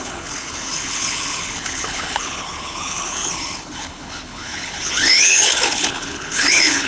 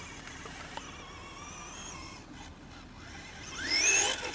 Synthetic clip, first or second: first